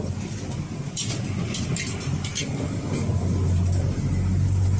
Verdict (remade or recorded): recorded